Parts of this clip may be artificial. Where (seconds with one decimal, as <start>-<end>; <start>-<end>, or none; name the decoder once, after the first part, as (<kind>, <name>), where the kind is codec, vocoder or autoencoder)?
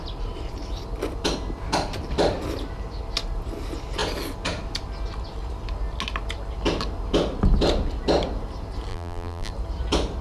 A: 8.9-9.5 (vocoder, BigVGAN v2)